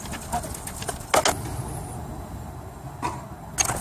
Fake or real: real